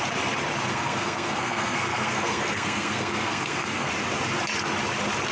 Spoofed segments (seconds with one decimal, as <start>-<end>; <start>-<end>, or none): 0.7-3.9